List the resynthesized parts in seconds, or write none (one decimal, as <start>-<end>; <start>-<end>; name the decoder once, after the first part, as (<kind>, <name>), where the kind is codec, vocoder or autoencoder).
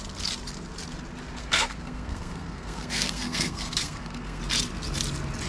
1.4-4.4 (codec, SNAC)